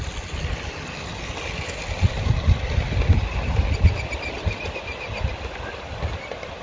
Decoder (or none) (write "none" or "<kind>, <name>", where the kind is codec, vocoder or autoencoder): none